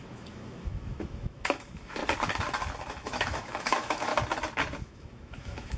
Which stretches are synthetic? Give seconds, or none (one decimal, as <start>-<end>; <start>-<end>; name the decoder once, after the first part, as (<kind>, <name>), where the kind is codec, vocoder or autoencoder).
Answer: 0.0-2.0 (autoencoder, DAC-VAE); 2.9-4.1; 4.8-5.8